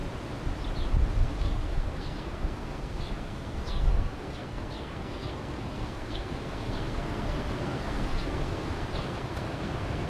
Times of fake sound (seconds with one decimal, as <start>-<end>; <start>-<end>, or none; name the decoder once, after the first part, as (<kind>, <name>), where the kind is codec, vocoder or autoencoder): 1.1-10.1 (codec, SNAC)

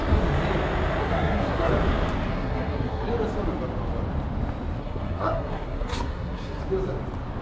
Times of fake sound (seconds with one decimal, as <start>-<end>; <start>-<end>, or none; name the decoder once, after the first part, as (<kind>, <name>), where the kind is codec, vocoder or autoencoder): 1.0-1.7 (codec, SNAC); 2.3-3.1; 4.8-6.6

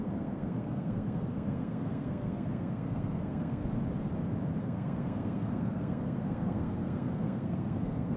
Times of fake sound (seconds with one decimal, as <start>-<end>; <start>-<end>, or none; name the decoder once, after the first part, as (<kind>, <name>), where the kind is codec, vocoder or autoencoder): 0.0-3.6 (codec, SNAC); 4.6-8.2

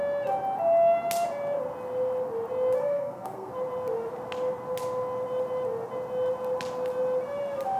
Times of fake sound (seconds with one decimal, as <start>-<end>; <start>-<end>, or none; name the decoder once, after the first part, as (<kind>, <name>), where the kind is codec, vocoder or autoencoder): 2.8-3.5 (codec, SNAC)